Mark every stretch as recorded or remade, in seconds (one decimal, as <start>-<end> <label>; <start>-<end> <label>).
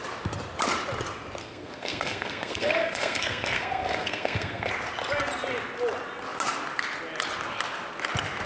0.0-1.4 recorded; 1.4-4.7 remade; 4.7-8.5 recorded